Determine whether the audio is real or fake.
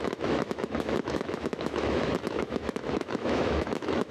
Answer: fake